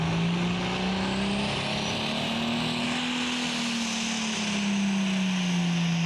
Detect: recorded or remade recorded